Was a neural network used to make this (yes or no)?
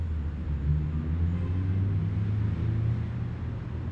no